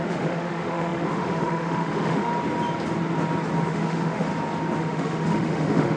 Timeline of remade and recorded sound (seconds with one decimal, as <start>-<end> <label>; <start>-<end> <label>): 0.0-2.3 remade; 2.3-3.7 recorded; 3.7-4.3 remade; 4.3-4.8 recorded; 4.8-6.0 remade